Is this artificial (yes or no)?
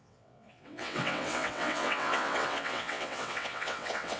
yes